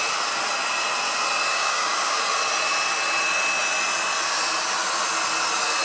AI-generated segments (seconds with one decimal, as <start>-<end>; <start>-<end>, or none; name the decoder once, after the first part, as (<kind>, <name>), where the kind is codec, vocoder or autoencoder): 1.5-2.2 (codec, DAC)